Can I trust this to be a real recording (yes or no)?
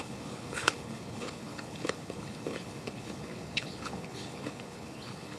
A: no